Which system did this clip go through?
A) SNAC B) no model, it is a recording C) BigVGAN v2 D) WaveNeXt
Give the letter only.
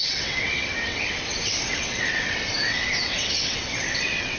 D